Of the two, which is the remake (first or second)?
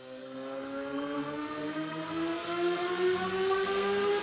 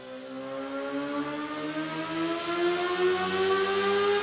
first